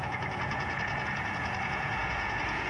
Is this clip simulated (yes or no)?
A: yes